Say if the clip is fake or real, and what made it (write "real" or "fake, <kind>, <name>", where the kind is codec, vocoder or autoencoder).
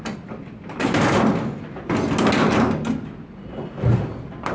real